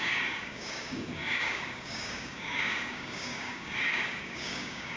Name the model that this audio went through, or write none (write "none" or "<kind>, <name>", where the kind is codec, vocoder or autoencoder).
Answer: codec, DAC